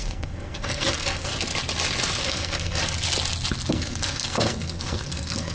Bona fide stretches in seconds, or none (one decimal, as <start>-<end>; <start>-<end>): 1.3-2.2; 2.8-3.7